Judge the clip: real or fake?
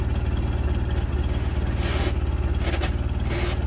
real